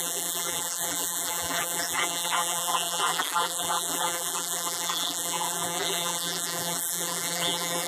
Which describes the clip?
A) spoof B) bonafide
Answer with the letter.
A